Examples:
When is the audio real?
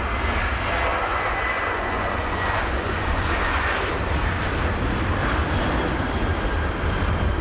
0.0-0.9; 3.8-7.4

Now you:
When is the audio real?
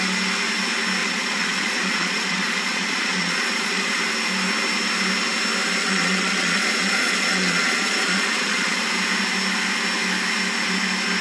0.0-1.0; 4.0-5.8; 8.8-11.2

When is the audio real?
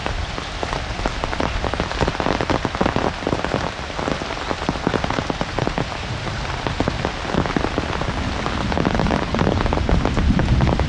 0.0-10.9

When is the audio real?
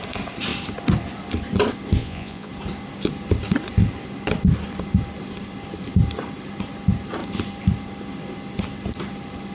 0.0-2.0; 2.5-9.5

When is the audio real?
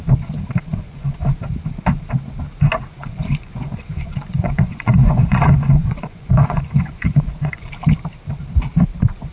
0.0-0.7; 1.3-2.9; 7.7-9.3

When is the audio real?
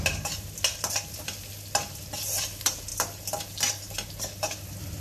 0.0-5.0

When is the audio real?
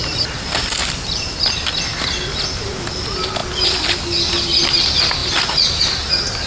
0.0-6.5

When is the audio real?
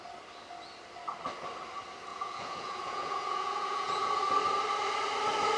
0.0-2.1; 4.2-5.6